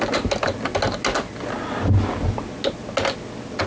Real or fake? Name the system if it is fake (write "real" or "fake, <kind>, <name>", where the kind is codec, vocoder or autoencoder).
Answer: real